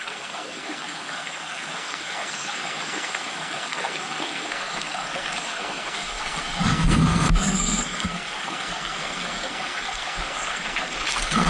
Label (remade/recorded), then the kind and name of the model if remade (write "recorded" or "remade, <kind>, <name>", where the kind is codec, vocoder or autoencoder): remade, codec, SNAC